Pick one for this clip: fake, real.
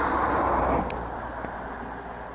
real